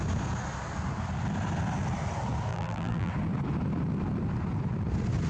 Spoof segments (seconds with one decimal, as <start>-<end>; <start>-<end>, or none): 2.5-3.1